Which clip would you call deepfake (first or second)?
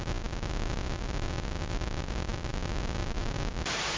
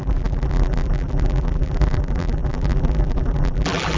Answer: second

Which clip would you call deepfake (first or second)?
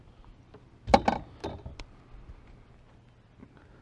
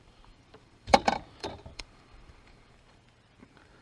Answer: second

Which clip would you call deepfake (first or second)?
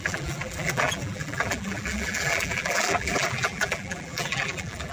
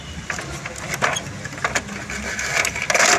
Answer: first